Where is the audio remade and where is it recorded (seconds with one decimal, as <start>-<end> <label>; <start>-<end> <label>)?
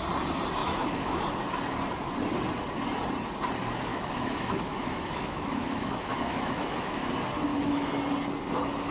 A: 0.0-0.6 recorded; 0.6-1.2 remade; 1.2-3.9 recorded; 3.9-7.1 remade; 7.1-7.5 recorded; 7.5-8.0 remade; 8.0-8.9 recorded